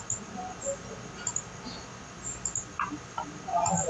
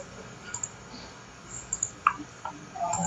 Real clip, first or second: first